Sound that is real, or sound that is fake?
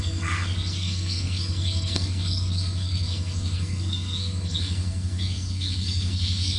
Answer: fake